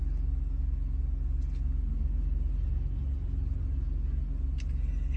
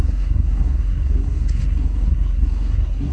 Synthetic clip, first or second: second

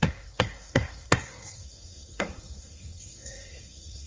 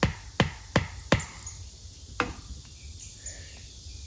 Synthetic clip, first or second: first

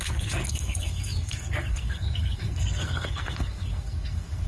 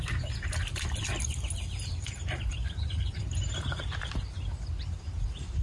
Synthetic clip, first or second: first